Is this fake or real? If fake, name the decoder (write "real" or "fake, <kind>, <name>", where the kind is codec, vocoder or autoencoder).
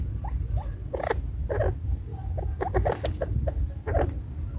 real